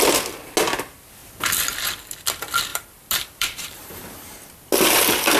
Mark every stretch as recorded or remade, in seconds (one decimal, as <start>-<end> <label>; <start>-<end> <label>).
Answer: 0.0-2.7 recorded; 2.7-4.3 remade; 4.3-5.4 recorded